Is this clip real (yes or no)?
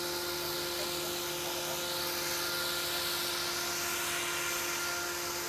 yes